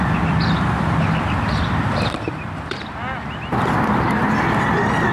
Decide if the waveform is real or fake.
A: real